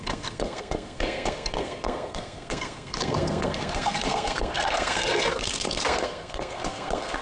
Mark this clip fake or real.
fake